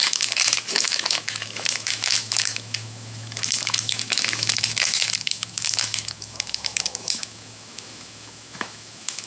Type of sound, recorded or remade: remade